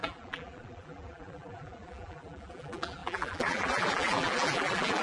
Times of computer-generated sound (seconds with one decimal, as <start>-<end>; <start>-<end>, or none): 0.0-5.0